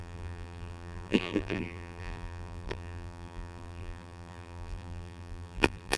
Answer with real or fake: fake